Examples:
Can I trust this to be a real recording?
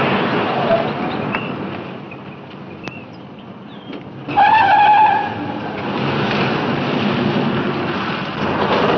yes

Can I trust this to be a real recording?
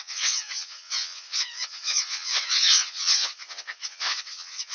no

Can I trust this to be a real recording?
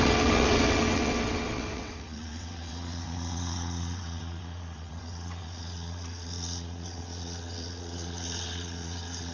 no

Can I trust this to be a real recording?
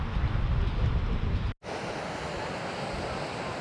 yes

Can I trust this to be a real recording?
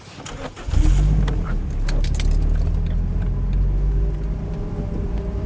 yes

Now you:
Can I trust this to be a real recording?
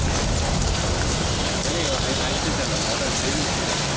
yes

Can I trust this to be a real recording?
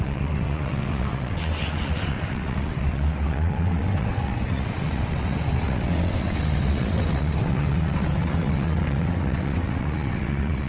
no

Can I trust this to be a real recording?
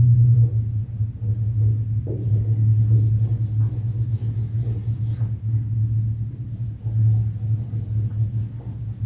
yes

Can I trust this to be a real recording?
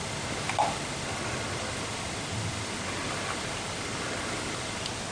yes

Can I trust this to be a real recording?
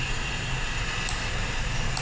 yes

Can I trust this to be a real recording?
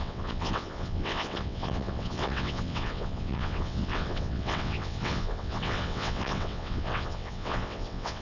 no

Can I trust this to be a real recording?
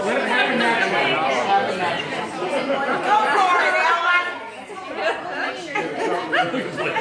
yes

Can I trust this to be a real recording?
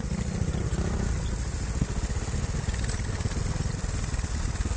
yes